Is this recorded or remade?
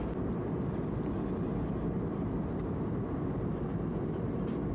recorded